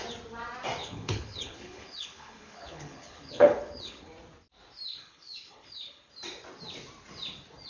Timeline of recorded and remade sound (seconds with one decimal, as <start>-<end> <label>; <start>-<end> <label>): 0.0-0.8 recorded; 0.8-4.1 remade; 4.1-4.9 recorded; 4.9-6.1 remade; 6.1-7.7 recorded